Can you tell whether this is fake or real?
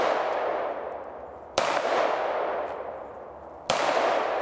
real